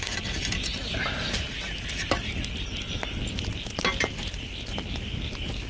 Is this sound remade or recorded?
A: recorded